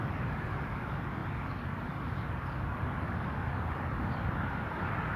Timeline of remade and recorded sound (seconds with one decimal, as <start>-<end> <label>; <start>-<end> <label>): 0.0-5.2 remade